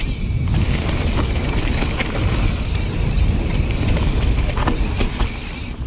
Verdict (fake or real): real